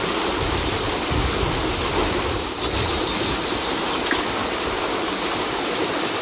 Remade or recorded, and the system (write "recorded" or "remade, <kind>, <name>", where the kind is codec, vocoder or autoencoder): recorded